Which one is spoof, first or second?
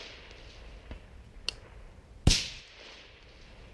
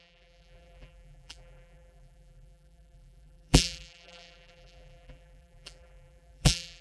second